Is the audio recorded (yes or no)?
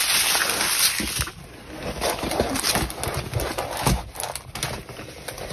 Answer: yes